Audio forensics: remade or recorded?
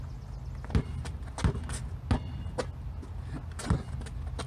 recorded